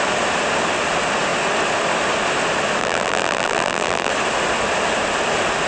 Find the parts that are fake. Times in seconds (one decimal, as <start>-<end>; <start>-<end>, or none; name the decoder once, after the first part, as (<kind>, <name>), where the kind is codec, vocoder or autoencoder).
2.8-4.1 (vocoder, BigVGAN v2)